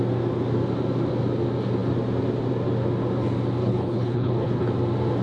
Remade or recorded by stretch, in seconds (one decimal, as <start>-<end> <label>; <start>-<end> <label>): 0.0-3.6 recorded; 3.6-4.7 remade; 4.7-5.2 recorded